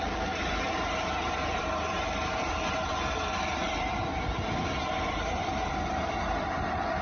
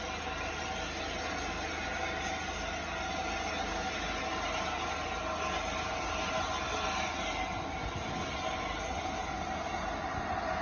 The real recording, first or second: second